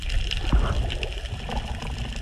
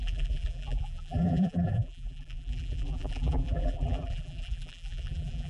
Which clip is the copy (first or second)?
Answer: second